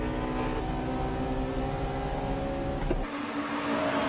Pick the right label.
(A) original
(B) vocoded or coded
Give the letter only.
A